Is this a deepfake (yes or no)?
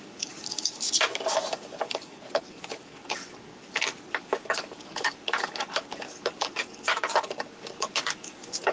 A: yes